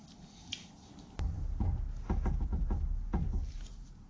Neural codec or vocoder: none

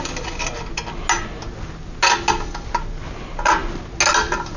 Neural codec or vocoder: none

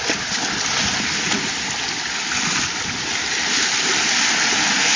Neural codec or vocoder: none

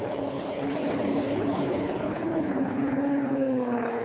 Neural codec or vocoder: codec, HILCodec